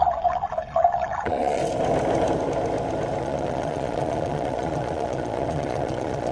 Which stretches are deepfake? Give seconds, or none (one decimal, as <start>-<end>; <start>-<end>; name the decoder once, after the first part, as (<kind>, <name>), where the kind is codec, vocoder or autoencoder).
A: 0.0-1.6 (vocoder, Vocos); 3.2-6.3